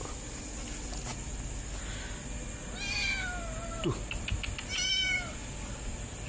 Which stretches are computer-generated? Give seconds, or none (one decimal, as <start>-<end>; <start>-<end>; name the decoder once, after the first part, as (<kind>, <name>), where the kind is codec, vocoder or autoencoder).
none